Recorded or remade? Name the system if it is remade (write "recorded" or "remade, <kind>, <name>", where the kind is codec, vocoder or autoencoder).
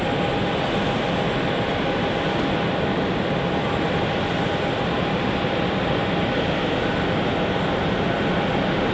recorded